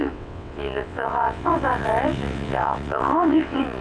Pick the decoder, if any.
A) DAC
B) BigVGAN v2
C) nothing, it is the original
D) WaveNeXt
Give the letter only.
D